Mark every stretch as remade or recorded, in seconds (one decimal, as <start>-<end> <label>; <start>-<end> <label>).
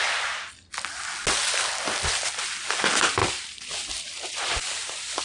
0.0-3.2 recorded; 3.2-5.2 remade